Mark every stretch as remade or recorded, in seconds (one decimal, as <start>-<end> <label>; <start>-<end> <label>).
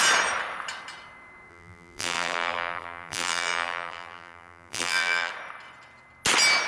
0.0-1.5 recorded; 1.5-5.3 remade; 5.3-6.7 recorded